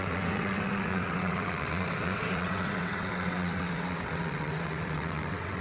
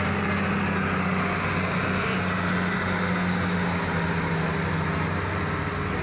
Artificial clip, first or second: first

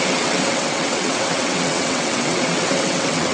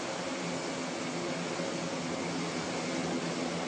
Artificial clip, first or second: first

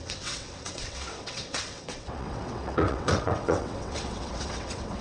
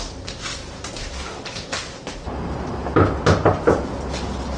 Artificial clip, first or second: first